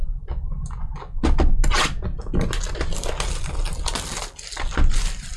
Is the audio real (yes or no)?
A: yes